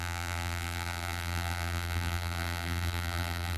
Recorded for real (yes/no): no